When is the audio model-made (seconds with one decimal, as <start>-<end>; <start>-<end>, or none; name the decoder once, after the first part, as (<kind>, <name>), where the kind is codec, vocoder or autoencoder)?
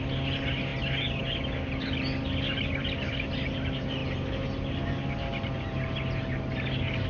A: none